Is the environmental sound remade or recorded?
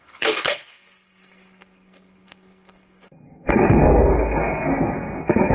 remade